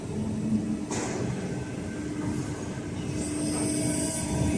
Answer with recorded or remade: recorded